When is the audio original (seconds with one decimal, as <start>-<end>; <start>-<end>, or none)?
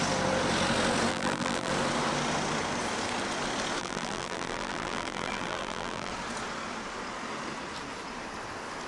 0.0-1.1; 1.7-3.8; 6.1-8.9